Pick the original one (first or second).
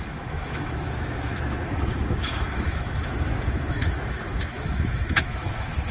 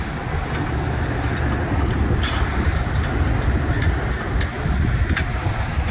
second